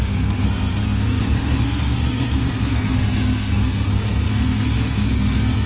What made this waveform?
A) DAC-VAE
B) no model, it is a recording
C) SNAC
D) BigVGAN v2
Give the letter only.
C